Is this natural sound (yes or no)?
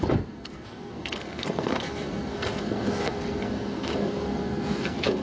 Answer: no